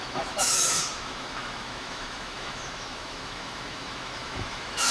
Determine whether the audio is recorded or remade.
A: remade